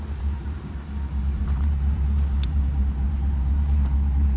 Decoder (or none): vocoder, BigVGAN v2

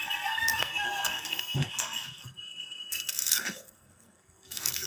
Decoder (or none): codec, SNAC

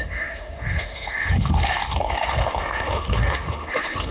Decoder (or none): autoencoder, DAC-VAE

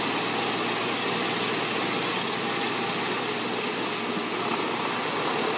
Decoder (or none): none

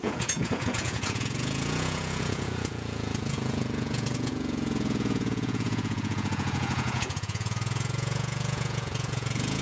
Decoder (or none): vocoder, Vocos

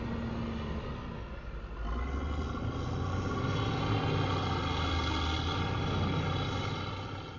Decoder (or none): none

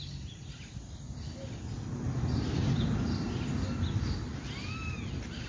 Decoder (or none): none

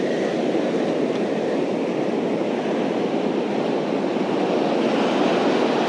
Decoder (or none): none